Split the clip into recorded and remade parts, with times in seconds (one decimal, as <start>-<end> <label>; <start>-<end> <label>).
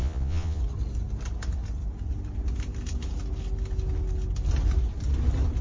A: 0.0-0.6 remade; 0.6-5.6 recorded